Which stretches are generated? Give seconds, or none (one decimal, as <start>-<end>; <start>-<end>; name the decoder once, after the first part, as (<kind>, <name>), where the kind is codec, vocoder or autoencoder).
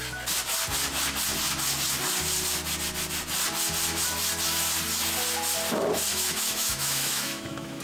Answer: 6.1-7.8 (autoencoder, DAC-VAE)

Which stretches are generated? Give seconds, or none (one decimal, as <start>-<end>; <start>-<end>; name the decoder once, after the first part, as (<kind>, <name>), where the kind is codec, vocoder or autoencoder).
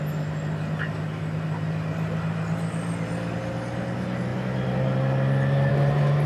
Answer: none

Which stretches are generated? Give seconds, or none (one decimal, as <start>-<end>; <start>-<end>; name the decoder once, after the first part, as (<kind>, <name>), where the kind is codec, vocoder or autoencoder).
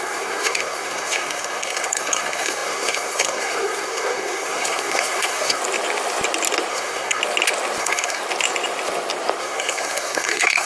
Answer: 0.0-5.6 (codec, SNAC); 6.7-7.2; 7.8-8.2; 9.4-10.7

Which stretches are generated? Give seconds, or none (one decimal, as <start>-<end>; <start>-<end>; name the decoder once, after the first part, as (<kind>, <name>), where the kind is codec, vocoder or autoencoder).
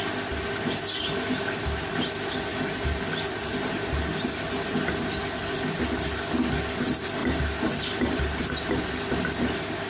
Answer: 0.0-2.5 (vocoder, BigVGAN v2); 5.4-9.9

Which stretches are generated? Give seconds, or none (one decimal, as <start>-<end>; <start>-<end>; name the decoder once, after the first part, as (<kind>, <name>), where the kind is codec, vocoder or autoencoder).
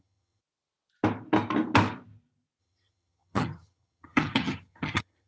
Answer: 0.0-0.4 (vocoder, HiFi-GAN); 2.6-5.3